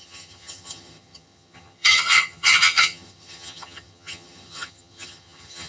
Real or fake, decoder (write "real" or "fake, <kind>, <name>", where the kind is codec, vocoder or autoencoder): fake, vocoder, HiFi-GAN